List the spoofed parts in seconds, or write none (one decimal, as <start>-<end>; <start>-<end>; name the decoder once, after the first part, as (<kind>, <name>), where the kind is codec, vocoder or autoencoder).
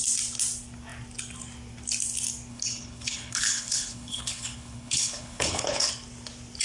2.5-5.9 (codec, HILCodec)